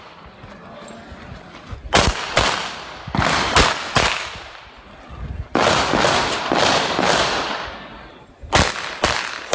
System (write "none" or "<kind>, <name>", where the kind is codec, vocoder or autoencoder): none